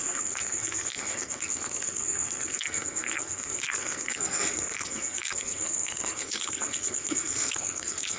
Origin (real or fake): fake